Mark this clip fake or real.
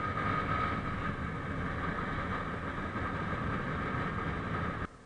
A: real